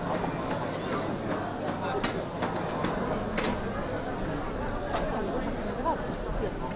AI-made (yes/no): no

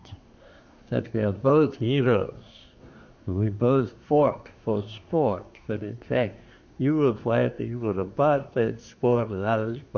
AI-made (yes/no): yes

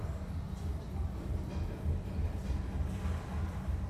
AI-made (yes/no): no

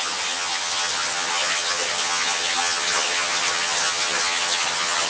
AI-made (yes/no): yes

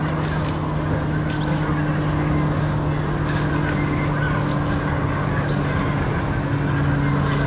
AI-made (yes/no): no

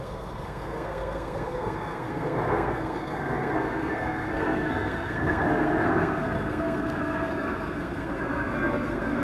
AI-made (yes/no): yes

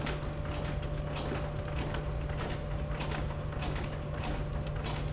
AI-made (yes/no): no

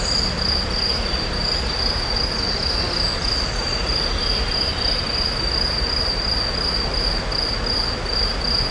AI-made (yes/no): no